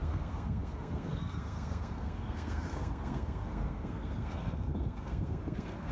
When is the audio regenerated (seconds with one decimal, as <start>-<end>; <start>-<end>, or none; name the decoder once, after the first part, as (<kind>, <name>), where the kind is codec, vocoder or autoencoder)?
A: 0.0-5.9 (codec, SNAC)